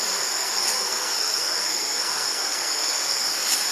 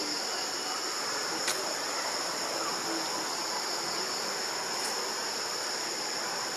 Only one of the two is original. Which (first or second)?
second